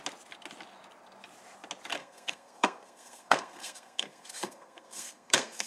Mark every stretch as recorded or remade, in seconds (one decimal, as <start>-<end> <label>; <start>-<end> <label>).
0.0-2.0 recorded; 2.0-5.7 remade